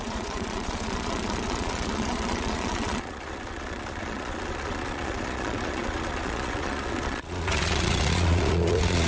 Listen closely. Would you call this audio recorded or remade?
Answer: remade